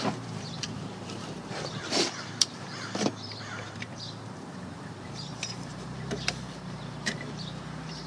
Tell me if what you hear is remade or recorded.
remade